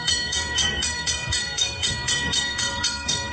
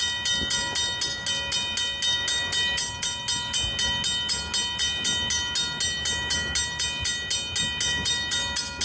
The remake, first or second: first